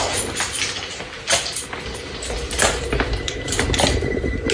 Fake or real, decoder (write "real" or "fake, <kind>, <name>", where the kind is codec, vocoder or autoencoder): real